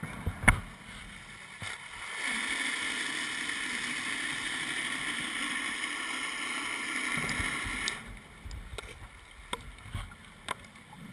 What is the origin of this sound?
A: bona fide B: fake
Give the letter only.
A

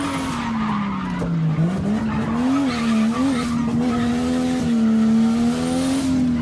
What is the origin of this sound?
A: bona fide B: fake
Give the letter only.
A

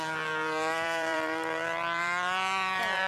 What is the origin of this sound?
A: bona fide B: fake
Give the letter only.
B